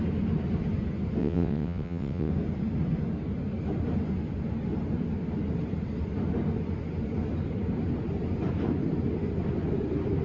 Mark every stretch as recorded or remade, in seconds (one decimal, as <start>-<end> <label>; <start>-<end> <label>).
0.0-1.2 recorded; 1.2-2.3 remade; 2.3-10.2 recorded